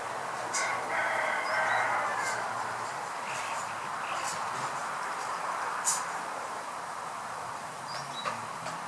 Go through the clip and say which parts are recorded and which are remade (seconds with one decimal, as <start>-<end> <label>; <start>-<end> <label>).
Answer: 0.0-4.8 recorded; 4.8-8.9 remade

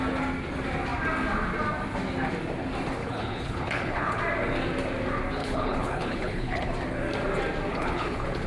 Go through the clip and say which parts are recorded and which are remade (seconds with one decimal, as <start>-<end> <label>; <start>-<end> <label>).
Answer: 0.0-3.0 recorded; 3.0-4.2 remade; 4.2-5.4 recorded; 5.4-6.7 remade; 6.7-7.7 recorded; 7.7-8.5 remade

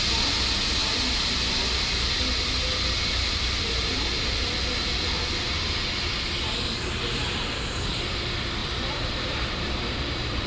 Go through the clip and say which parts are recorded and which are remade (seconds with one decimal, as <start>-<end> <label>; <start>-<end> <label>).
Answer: 0.0-8.6 recorded; 8.6-10.5 remade

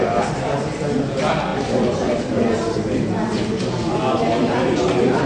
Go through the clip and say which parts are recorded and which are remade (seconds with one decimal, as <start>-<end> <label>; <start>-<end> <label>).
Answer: 0.0-5.3 recorded

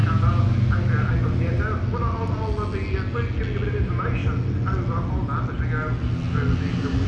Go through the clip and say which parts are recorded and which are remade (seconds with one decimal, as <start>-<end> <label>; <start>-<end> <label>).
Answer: 0.0-7.1 recorded